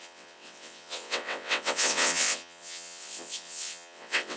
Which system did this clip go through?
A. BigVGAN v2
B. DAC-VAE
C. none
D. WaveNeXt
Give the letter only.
D